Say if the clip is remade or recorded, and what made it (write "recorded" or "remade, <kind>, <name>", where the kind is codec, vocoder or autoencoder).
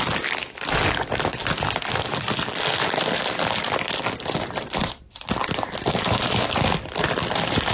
recorded